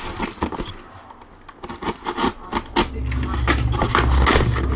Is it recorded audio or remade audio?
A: recorded